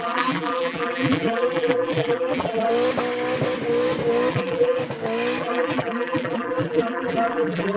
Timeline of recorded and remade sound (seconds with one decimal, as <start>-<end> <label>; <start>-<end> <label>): 0.0-2.7 remade; 2.7-4.3 recorded; 4.3-4.8 remade; 4.8-5.4 recorded; 5.4-7.8 remade